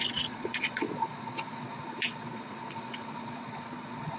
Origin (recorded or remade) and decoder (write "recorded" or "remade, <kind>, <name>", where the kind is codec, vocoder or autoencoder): remade, vocoder, Vocos